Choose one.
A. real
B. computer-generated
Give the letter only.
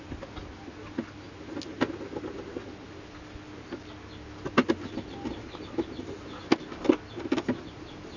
A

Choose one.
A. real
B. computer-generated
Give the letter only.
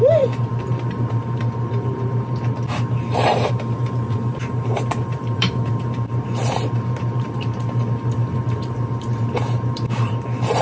B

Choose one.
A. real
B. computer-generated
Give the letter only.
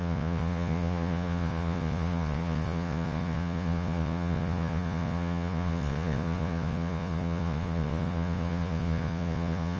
B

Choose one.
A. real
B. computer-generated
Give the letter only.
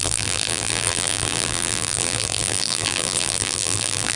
B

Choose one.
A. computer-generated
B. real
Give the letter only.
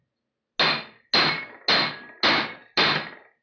B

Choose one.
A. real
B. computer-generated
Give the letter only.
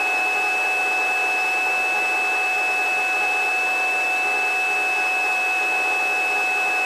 A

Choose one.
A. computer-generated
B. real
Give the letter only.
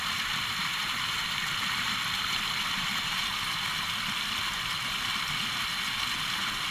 B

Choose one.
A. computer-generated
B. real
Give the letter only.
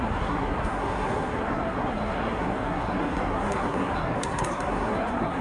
A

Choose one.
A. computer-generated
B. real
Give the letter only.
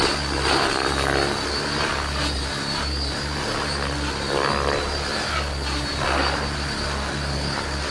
B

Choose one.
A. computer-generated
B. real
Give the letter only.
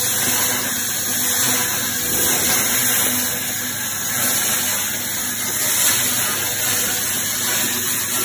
B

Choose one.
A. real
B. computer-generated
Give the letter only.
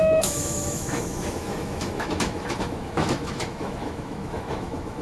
B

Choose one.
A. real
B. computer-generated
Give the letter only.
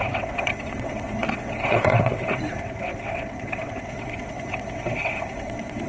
B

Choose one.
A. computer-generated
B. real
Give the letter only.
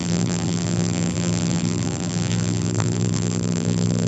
A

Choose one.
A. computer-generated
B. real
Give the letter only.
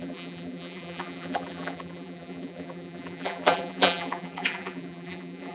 A